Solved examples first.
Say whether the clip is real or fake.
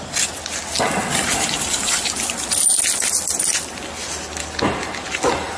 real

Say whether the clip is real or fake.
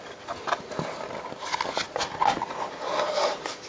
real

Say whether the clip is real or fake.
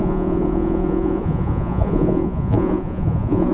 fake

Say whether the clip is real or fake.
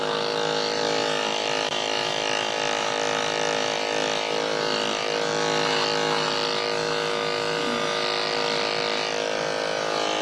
real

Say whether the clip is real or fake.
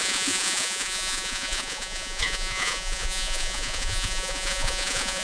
fake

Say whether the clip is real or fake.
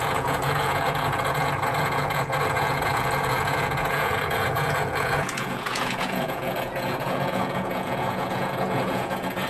fake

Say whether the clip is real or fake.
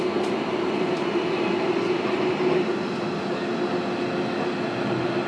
real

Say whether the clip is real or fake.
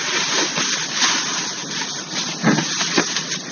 real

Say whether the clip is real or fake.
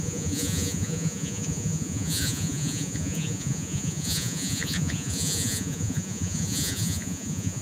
fake